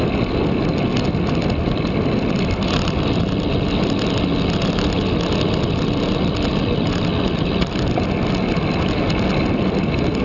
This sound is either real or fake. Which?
real